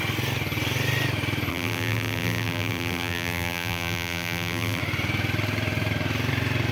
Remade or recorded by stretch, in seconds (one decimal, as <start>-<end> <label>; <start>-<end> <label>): 0.0-1.5 recorded; 1.5-4.8 remade; 4.8-6.7 recorded